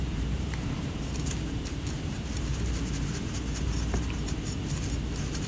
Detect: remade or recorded remade